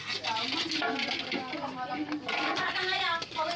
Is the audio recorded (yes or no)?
no